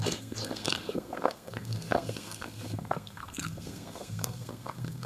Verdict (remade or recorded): remade